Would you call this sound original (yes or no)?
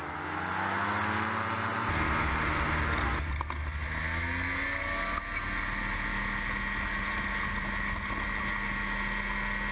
yes